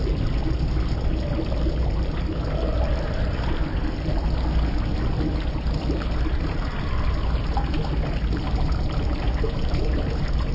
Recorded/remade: recorded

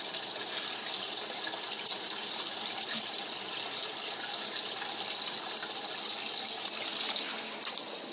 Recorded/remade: recorded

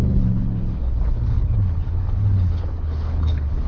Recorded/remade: remade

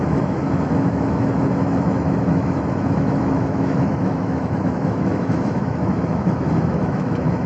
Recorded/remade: remade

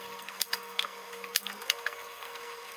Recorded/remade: remade